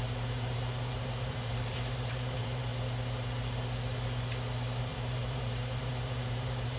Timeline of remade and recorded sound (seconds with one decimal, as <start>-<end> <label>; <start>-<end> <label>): 0.0-2.7 remade; 2.7-4.8 recorded; 4.8-6.8 remade

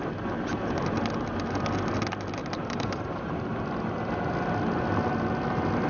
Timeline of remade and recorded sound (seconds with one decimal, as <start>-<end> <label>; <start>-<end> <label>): 0.0-2.4 recorded; 2.4-3.6 remade; 3.6-5.9 recorded

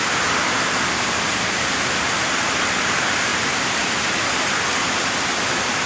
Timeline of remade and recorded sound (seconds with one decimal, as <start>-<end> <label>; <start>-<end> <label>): 0.0-1.0 recorded; 1.0-3.3 remade; 3.3-4.8 recorded; 4.8-5.9 remade

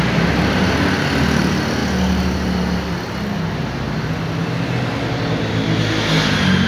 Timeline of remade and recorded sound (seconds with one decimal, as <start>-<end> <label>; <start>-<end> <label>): 0.0-6.7 recorded

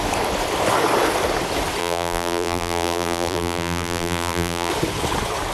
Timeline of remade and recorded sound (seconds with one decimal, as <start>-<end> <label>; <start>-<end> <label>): 0.0-1.8 recorded; 1.8-4.7 remade; 4.7-5.5 recorded

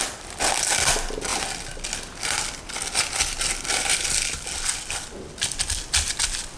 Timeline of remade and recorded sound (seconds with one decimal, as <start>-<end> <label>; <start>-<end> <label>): 0.0-6.6 recorded